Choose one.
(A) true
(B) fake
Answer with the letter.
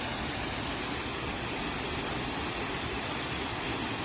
A